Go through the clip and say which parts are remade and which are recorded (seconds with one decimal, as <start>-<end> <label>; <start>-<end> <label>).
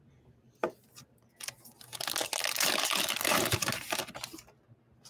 0.0-5.1 recorded